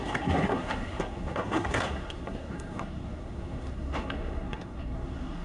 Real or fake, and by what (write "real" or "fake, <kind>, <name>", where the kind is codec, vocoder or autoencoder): fake, codec, SNAC